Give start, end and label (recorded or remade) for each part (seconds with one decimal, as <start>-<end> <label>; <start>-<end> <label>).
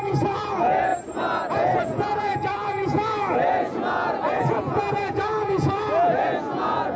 0.0-0.9 remade; 0.9-1.5 recorded; 1.5-7.0 remade